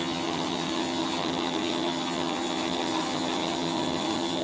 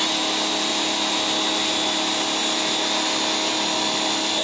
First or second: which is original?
second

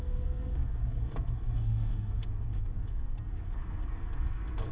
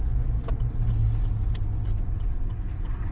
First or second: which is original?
second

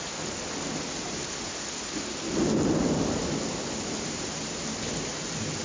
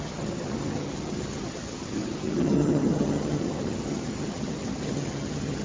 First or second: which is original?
first